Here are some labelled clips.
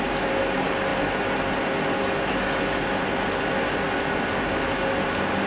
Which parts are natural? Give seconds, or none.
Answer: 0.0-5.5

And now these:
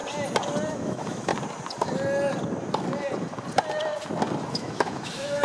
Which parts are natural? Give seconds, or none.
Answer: 0.0-0.7; 1.3-4.5